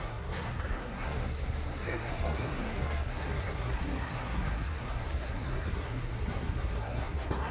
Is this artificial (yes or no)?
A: yes